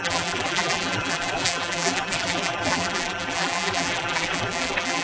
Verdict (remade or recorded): remade